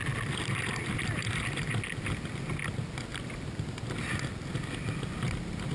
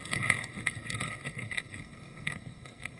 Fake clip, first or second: second